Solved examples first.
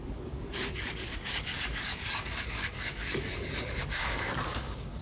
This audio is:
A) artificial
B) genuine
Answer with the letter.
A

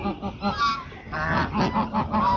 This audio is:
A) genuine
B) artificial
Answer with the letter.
A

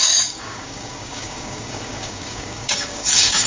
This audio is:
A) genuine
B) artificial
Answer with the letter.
B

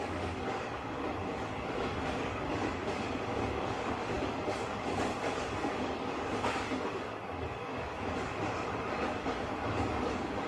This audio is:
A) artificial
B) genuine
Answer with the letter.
A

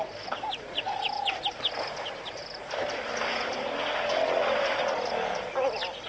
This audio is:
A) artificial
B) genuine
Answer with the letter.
B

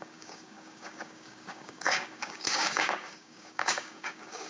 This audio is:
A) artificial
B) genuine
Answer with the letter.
A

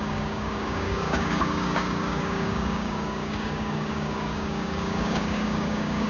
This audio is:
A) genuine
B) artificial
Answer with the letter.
B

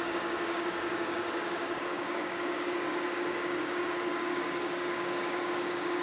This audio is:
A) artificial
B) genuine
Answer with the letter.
A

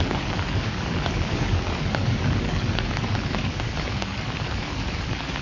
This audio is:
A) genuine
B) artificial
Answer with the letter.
B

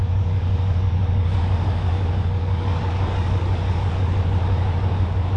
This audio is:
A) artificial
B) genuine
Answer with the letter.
A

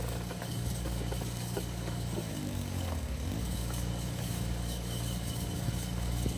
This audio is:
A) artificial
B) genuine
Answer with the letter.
A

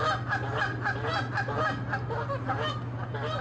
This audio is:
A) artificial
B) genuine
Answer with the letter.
B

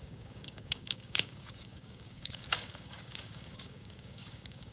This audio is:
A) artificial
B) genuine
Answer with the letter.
A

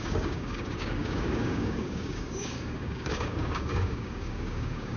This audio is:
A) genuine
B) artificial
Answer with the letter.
B